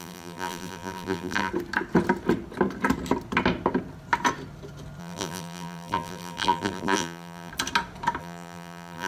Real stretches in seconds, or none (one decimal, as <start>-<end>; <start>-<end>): 1.5-5.0; 7.5-8.2